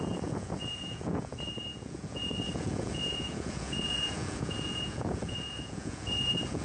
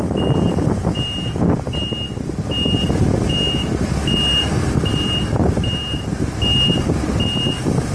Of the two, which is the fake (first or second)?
first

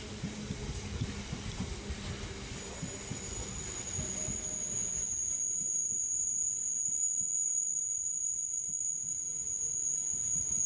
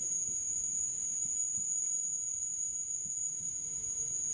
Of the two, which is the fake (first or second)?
second